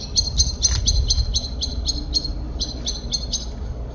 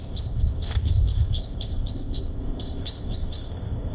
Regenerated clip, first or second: second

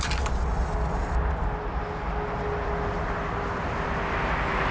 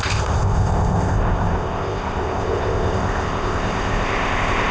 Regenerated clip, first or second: second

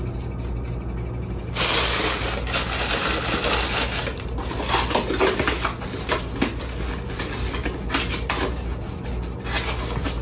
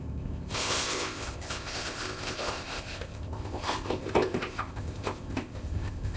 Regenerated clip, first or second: second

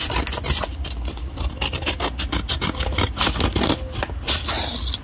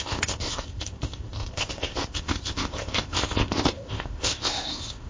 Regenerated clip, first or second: second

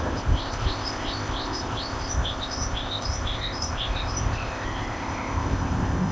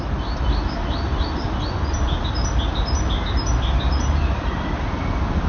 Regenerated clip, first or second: first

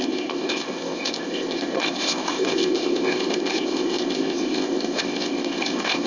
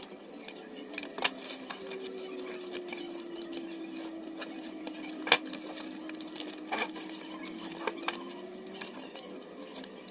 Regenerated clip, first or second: first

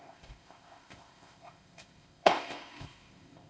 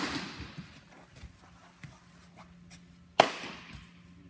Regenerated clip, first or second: first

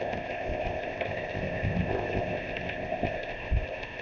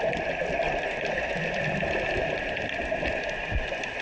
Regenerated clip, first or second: first